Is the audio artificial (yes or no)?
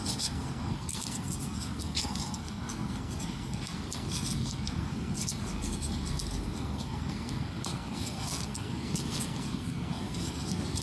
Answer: yes